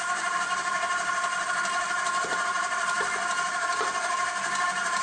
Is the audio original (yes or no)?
no